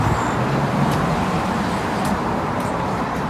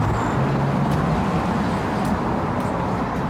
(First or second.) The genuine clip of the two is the second